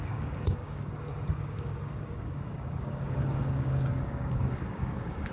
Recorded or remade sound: remade